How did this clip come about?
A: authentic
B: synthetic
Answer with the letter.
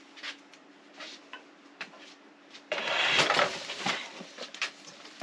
A